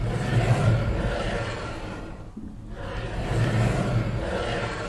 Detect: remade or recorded recorded